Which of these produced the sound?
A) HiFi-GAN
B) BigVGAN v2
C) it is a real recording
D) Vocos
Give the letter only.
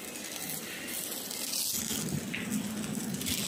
C